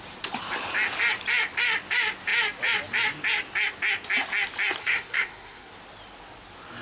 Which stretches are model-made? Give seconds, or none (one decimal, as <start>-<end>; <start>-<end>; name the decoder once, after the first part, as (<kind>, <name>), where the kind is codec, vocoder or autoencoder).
4.8-5.7 (codec, SNAC)